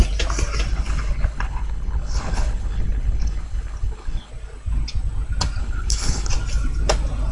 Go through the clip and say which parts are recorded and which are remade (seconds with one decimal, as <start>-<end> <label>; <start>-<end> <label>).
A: 0.0-0.7 recorded; 0.7-4.3 remade; 4.3-5.6 recorded; 5.6-6.3 remade; 6.3-7.3 recorded